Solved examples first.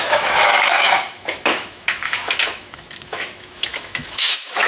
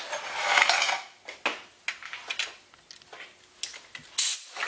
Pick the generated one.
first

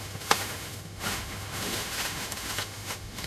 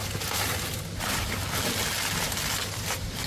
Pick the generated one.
first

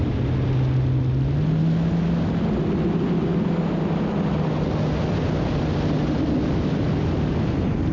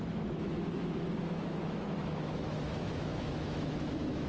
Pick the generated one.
second